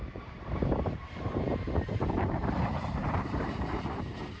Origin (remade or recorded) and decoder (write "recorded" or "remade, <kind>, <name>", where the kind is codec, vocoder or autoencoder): remade, vocoder, BigVGAN v2